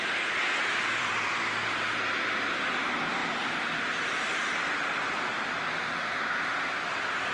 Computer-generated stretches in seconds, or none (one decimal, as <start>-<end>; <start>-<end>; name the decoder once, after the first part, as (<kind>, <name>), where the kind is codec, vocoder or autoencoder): 0.7-2.8 (vocoder, BigVGAN v2); 3.2-6.1